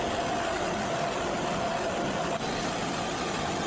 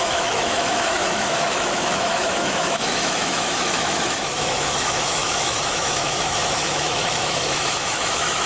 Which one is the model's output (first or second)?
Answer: second